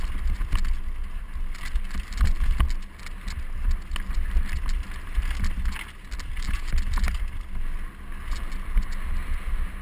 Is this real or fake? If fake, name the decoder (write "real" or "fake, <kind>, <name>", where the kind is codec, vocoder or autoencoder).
real